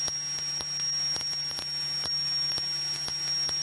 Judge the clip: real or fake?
real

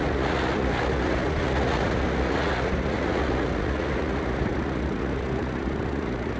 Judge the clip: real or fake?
fake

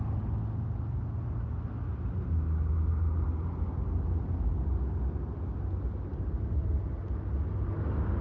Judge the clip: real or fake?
real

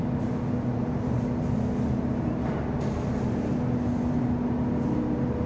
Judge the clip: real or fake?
real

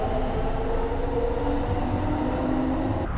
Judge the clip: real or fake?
real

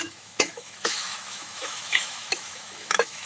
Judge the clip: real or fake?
fake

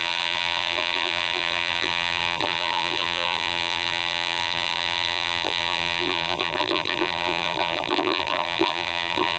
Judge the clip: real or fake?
fake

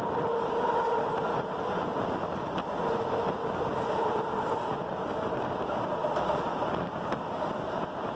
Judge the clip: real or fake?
real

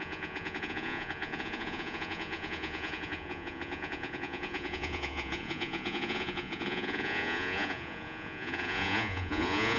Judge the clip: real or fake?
fake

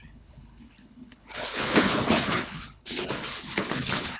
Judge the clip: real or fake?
fake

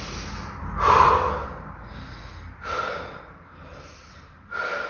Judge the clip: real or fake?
real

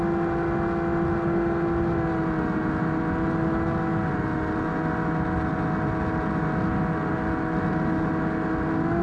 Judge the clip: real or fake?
real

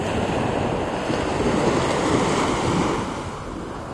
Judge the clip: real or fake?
real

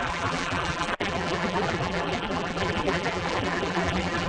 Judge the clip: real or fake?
fake